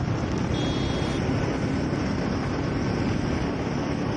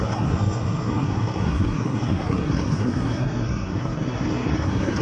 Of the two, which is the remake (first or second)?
second